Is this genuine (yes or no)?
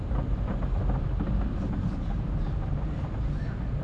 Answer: yes